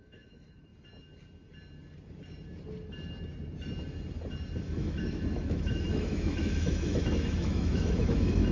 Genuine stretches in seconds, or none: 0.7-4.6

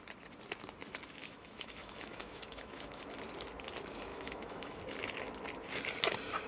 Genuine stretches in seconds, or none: 0.0-1.2; 3.0-4.1; 4.8-6.5